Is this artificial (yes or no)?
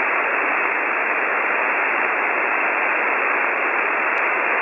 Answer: yes